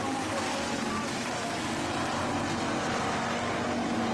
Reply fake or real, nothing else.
real